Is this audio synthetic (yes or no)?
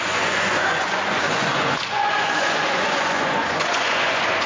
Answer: yes